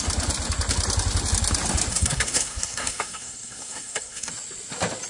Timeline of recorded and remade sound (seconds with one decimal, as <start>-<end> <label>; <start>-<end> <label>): 0.0-1.9 recorded; 1.9-4.3 remade; 4.3-5.1 recorded